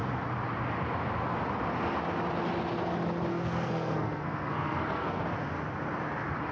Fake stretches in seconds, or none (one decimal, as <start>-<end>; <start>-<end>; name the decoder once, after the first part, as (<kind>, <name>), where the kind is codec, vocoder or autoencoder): 3.3-5.2 (codec, SNAC)